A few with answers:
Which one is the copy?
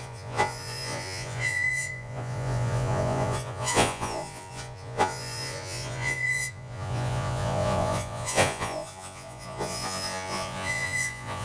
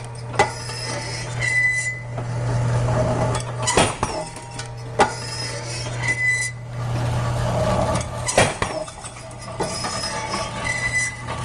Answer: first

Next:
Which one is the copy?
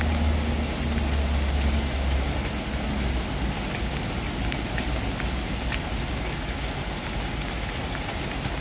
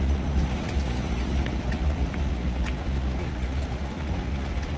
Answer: second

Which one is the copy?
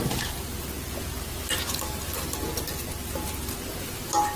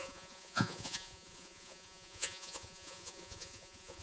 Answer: second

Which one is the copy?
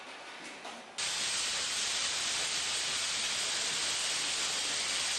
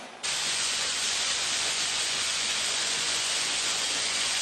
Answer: second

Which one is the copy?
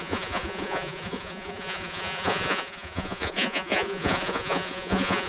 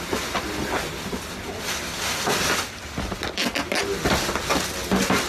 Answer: first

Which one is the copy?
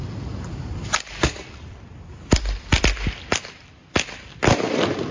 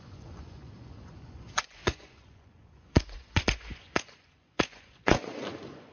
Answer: second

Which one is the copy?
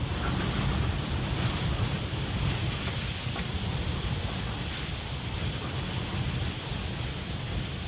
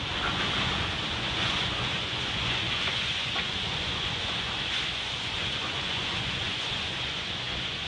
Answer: second